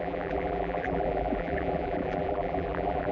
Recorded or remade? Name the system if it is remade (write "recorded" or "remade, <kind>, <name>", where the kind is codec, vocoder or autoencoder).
remade, vocoder, BigVGAN v2